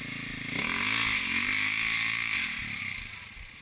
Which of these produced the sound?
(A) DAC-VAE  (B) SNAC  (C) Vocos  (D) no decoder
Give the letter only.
D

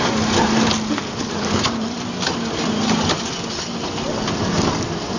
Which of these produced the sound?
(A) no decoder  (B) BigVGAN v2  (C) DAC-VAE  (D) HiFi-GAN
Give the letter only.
A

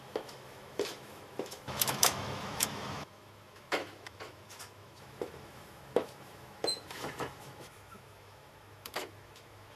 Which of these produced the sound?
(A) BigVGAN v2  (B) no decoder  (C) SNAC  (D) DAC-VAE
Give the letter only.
D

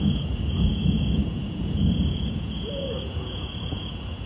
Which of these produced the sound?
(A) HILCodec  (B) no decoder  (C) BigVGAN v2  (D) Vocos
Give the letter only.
D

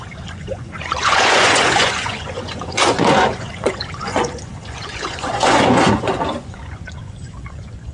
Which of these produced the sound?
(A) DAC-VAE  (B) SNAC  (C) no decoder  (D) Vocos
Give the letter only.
D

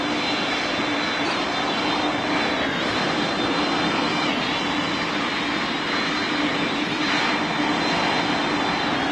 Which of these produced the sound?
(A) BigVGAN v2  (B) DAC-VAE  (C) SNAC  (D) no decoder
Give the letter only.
D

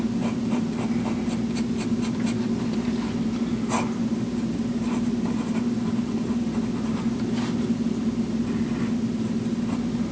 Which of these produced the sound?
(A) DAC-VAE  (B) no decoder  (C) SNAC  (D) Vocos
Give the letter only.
B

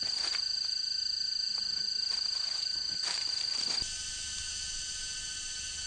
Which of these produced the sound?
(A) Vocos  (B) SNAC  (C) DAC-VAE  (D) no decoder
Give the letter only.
D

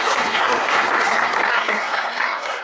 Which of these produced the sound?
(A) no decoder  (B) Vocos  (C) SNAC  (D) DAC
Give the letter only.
C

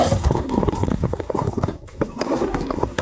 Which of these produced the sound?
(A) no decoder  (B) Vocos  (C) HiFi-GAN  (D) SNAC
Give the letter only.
D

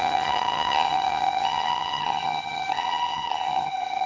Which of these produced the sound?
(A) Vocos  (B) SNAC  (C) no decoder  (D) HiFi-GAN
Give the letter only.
D